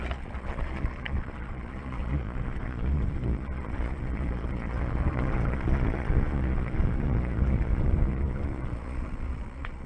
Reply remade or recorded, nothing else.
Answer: remade